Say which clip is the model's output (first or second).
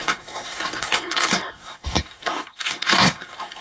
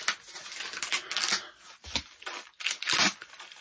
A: first